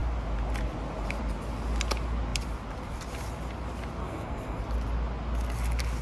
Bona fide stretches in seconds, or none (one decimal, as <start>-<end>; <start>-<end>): 0.0-4.0; 4.6-6.0